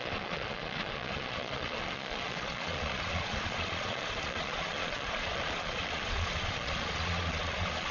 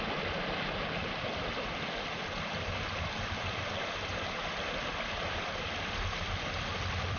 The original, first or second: second